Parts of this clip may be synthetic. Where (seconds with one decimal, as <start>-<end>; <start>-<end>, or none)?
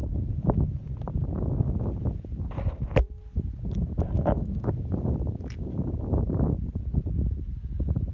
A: none